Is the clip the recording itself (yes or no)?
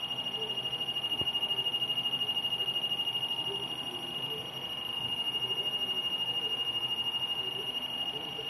yes